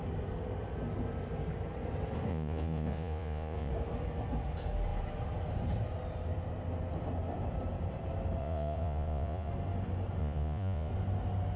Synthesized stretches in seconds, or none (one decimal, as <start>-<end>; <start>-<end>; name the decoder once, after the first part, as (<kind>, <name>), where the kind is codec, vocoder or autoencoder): 2.3-3.7 (vocoder, Vocos); 8.4-9.5; 10.2-10.9